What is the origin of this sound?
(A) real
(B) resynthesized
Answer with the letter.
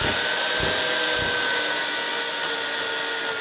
A